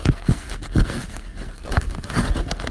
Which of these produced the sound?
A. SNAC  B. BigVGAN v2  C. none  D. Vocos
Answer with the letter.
A